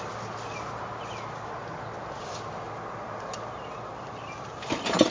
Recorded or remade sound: recorded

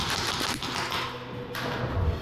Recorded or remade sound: recorded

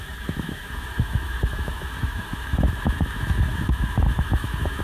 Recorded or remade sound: remade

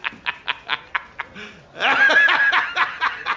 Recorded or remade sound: recorded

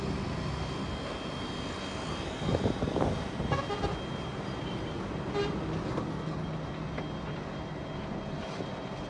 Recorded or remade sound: recorded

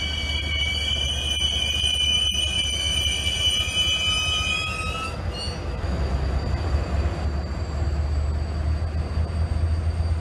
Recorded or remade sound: recorded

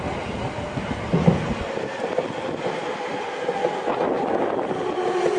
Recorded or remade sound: recorded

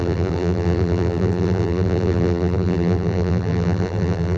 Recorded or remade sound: remade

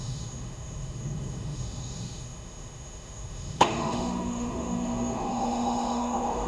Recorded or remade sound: remade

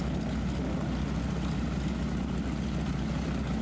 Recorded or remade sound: recorded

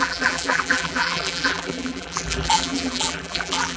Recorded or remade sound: remade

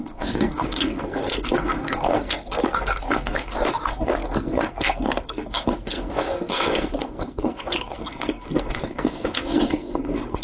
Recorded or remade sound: remade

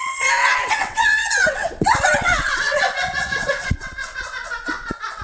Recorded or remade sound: remade